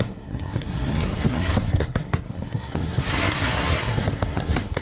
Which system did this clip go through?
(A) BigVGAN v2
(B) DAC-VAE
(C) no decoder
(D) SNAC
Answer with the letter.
D